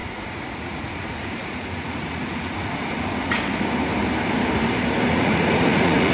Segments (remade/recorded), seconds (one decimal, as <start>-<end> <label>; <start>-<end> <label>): 0.0-3.4 remade; 3.4-5.1 recorded; 5.1-6.1 remade